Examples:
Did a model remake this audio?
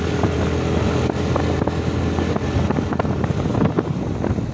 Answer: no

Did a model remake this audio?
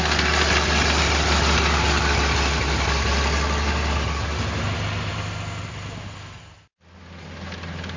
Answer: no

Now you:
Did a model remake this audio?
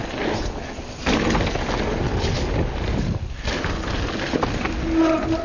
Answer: no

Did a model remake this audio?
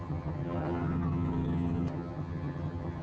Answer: yes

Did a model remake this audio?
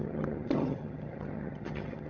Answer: yes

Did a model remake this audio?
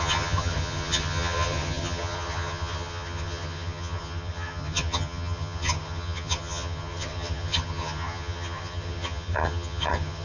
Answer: yes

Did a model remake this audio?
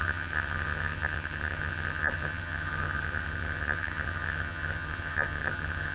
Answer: yes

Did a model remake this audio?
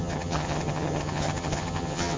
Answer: yes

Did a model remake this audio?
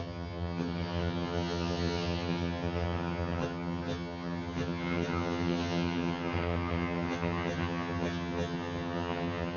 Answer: yes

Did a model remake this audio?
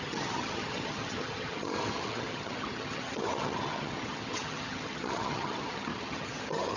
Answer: yes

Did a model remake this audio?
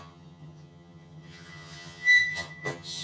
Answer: yes